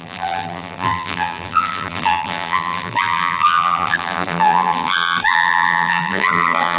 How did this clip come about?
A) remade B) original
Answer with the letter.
A